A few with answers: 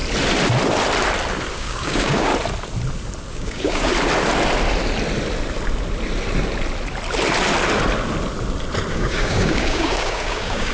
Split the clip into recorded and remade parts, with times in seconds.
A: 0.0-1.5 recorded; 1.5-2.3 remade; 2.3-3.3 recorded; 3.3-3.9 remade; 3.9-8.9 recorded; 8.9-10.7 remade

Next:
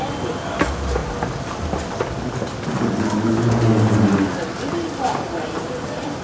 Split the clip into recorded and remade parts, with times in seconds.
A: 0.0-6.2 recorded

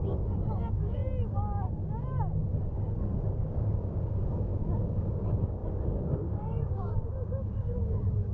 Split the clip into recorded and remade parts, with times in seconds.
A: 0.0-1.0 remade; 1.0-3.3 recorded; 3.3-8.3 remade

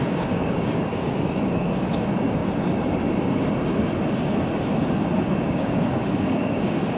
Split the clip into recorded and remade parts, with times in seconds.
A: 0.0-2.4 remade; 2.4-5.2 recorded; 5.2-7.0 remade

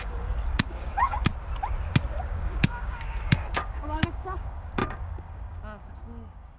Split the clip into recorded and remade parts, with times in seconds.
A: 0.0-1.3 remade; 1.3-2.2 recorded; 2.2-6.6 remade

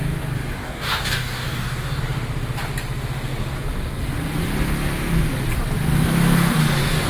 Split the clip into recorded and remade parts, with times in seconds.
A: 0.0-0.6 recorded; 0.6-2.0 remade; 2.0-7.1 recorded